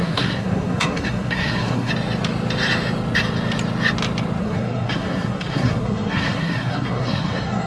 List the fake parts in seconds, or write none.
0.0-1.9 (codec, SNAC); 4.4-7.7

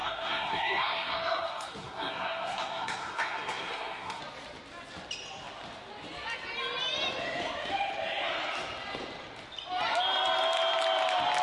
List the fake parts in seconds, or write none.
0.0-4.2 (codec, SNAC)

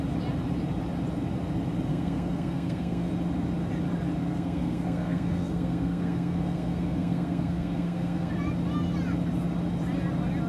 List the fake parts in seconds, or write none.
1.9-3.1 (codec, SNAC); 4.2-8.3

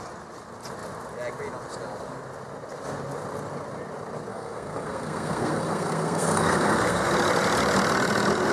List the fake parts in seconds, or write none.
4.3-7.1 (codec, SNAC)

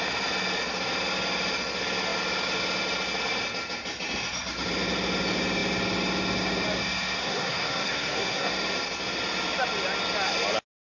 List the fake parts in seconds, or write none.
7.2-8.5 (codec, SNAC)

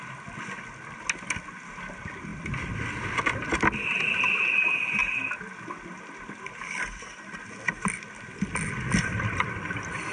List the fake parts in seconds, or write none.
none

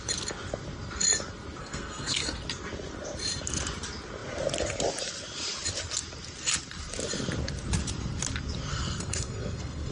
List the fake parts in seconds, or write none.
1.6-2.4 (codec, SNAC); 8.7-9.9

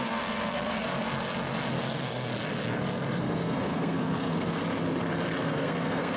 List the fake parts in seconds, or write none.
0.0-0.9 (codec, SNAC); 1.7-2.3; 3.2-4.6; 5.4-6.2